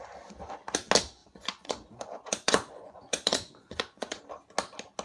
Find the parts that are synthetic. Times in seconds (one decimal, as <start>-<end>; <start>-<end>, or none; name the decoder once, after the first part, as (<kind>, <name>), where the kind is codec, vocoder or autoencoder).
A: 1.2-4.2 (vocoder, Vocos)